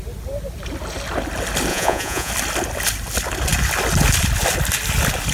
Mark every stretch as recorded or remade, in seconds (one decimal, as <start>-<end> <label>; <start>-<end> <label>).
0.0-1.7 recorded; 1.7-2.3 remade; 2.3-5.3 recorded